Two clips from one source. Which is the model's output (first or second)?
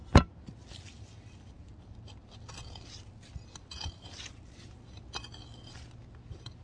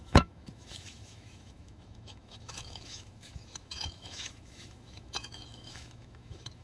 second